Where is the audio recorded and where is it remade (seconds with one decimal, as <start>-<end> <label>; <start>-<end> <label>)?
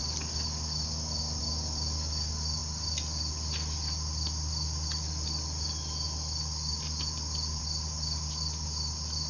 0.0-9.3 recorded